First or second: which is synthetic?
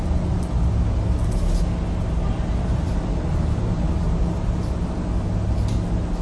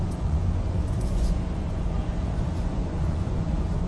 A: second